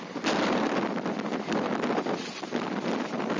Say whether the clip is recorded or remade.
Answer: recorded